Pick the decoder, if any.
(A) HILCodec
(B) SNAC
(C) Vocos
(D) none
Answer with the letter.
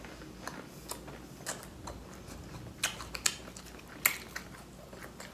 D